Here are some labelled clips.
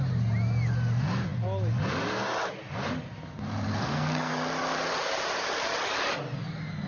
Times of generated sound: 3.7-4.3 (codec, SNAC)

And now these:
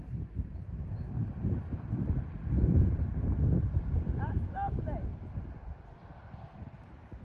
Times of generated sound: none

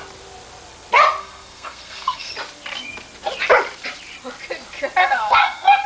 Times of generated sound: 1.2-2.3 (codec, SNAC); 5.0-5.9